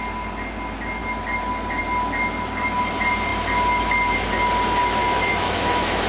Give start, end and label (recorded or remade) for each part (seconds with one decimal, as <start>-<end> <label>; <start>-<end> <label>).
0.0-5.0 recorded; 5.0-6.1 remade